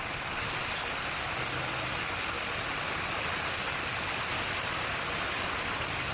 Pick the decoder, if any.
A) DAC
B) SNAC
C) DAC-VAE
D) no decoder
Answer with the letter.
D